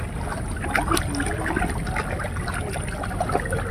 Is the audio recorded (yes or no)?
yes